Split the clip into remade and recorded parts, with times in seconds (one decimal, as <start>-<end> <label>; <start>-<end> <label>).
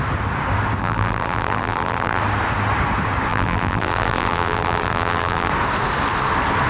0.0-0.8 recorded; 0.8-2.2 remade; 2.2-3.3 recorded; 3.3-5.5 remade; 5.5-6.7 recorded